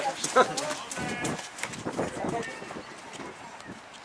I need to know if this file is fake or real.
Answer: real